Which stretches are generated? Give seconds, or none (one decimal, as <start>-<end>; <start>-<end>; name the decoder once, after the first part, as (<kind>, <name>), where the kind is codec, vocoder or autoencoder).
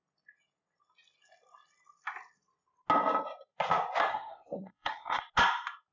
4.1-5.2 (codec, SNAC)